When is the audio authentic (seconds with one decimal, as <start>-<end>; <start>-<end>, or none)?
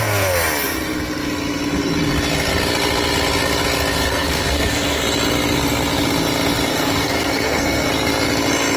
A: 0.0-4.1; 5.0-6.7; 7.9-8.8